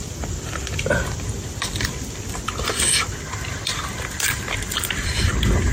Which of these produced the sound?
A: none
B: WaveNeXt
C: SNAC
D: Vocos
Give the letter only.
A